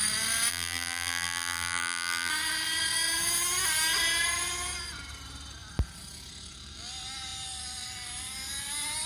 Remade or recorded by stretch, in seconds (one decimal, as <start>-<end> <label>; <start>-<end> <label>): 0.0-0.5 recorded; 0.5-2.3 remade; 2.3-9.1 recorded

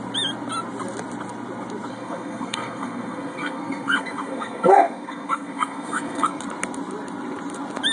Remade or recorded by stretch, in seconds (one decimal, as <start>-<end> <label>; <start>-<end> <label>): 0.0-1.9 recorded; 1.9-6.4 remade; 6.4-7.9 recorded

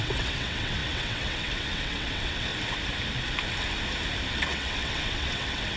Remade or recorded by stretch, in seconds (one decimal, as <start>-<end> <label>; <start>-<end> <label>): 0.0-2.5 remade; 2.5-4.3 recorded; 4.3-5.8 remade

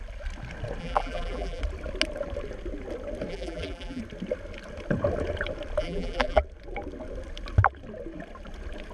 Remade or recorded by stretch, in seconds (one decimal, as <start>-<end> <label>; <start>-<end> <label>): 0.0-0.8 recorded; 0.8-1.6 remade; 1.6-3.3 recorded; 3.3-4.0 remade; 4.0-5.8 recorded; 5.8-6.4 remade; 6.4-8.9 recorded